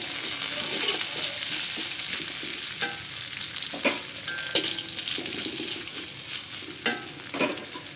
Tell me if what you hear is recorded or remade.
recorded